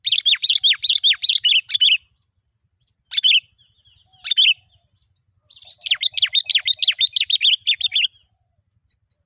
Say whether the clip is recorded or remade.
recorded